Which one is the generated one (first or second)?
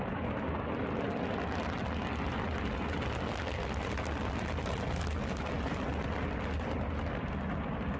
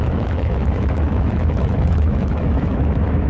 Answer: second